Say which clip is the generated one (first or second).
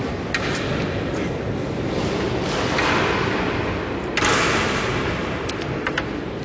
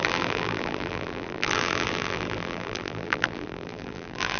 second